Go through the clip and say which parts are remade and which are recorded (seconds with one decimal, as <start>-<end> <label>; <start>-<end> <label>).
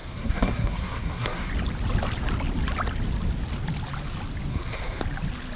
0.0-1.5 remade; 1.5-4.5 recorded; 4.5-5.0 remade; 5.0-5.5 recorded